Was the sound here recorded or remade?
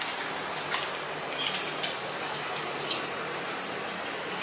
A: recorded